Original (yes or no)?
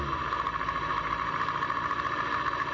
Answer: yes